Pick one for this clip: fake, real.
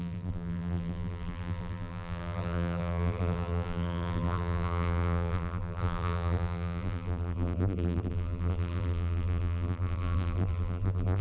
fake